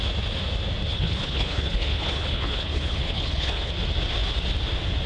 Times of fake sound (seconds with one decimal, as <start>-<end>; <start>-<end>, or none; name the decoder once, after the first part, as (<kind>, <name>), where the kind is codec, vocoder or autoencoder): 0.9-3.7 (codec, HILCodec)